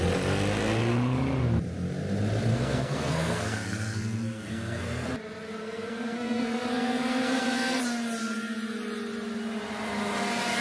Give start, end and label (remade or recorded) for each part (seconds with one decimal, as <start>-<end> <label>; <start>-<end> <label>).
0.0-2.5 recorded; 2.5-5.1 remade; 5.1-5.6 recorded; 5.6-7.8 remade; 7.8-10.6 recorded